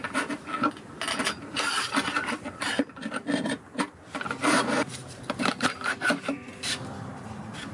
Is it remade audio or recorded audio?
remade